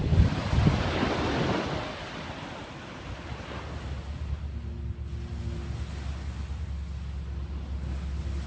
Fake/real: real